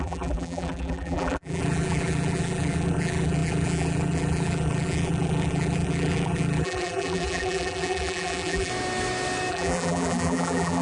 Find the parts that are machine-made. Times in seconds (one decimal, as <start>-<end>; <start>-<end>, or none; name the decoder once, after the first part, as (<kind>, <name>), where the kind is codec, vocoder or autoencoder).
0.0-8.7 (vocoder, BigVGAN v2); 9.5-10.8